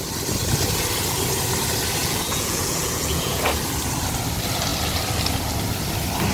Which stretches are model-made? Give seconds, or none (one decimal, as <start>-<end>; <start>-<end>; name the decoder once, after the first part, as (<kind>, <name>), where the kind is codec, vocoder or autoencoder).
2.0-3.4 (vocoder, Vocos)